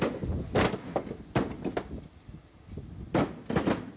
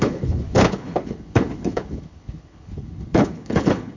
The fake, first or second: second